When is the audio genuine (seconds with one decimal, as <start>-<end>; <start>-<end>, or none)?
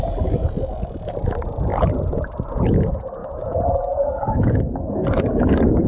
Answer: 0.0-3.2